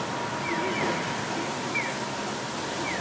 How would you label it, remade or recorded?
recorded